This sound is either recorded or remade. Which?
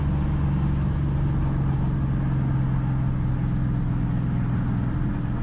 recorded